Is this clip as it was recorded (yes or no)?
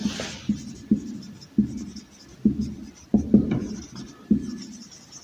yes